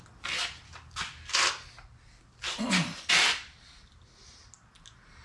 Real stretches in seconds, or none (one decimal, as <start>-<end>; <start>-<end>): 0.0-5.2